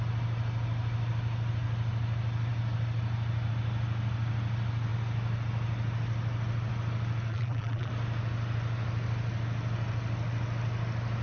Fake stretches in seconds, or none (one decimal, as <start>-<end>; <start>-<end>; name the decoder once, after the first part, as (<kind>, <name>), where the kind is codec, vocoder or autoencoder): 7.3-7.9 (vocoder, BigVGAN v2)